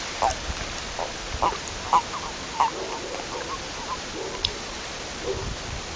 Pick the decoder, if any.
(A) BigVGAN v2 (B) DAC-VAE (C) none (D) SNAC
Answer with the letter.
A